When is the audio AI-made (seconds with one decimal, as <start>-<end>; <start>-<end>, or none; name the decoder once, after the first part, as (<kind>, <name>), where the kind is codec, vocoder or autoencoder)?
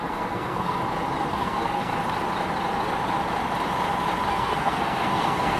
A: 0.0-0.8 (codec, SNAC); 1.3-1.9; 4.3-5.6